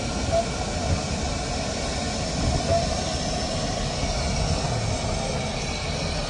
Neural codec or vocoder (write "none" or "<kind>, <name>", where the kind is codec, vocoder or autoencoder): none